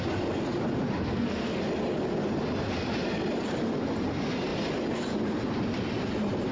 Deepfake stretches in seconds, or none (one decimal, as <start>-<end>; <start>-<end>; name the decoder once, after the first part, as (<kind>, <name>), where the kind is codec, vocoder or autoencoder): 1.0-1.6 (codec, SNAC)

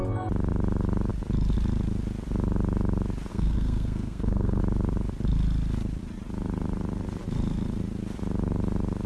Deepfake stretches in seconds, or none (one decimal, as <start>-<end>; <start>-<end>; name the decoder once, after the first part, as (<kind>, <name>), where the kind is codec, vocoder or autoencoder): 3.3-4.6 (codec, SNAC)

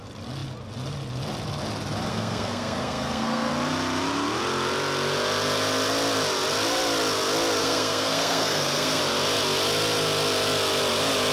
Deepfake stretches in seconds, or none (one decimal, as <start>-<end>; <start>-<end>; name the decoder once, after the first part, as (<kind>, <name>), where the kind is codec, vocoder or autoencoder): 2.1-3.5 (codec, SNAC); 7.6-9.0

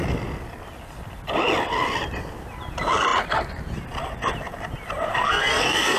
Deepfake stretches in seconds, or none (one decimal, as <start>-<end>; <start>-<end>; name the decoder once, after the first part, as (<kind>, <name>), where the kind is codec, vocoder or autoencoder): 5.1-6.0 (codec, SNAC)